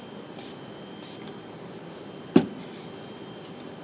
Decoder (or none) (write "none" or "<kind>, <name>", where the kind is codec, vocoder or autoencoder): none